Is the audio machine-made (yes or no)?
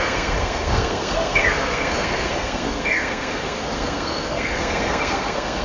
yes